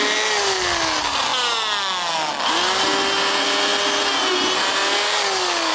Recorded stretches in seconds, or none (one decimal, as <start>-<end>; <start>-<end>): 0.0-5.7